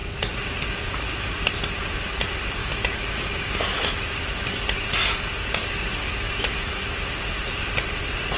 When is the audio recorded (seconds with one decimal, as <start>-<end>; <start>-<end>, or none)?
0.0-2.6; 4.0-6.1; 7.1-8.4